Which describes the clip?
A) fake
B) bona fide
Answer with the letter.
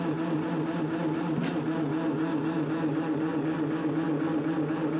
B